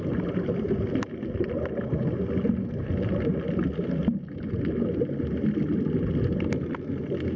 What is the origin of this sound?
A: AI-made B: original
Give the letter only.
B